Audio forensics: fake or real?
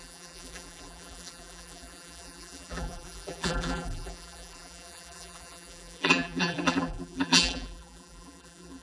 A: fake